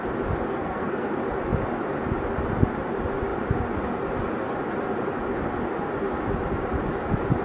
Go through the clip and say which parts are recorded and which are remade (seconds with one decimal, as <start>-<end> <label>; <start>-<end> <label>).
0.0-0.5 recorded; 0.5-1.1 remade; 1.1-7.4 recorded